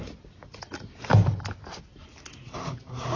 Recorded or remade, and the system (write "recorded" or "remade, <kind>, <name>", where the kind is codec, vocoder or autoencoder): recorded